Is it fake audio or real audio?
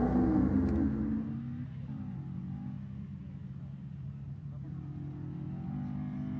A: real